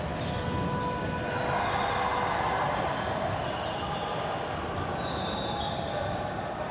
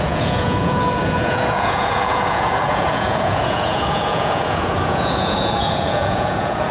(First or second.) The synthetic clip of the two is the second